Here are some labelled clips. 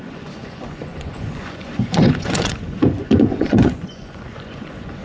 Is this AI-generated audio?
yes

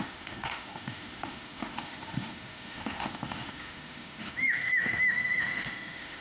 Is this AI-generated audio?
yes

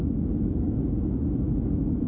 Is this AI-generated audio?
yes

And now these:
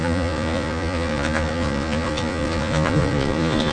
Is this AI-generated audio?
yes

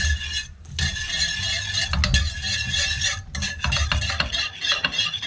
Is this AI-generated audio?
no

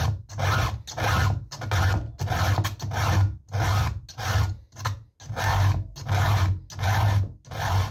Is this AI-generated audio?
no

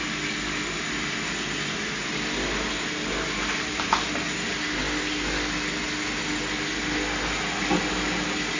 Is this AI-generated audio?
no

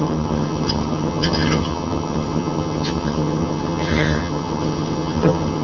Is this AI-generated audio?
yes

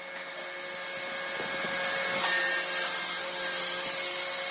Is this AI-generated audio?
no